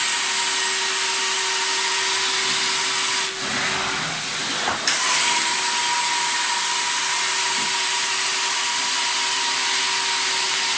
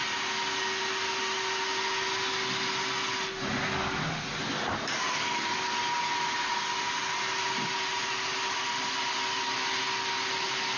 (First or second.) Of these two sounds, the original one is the second